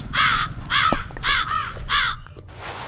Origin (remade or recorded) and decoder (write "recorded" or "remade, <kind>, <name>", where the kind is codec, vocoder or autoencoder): remade, vocoder, Vocos